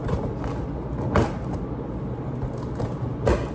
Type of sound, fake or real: real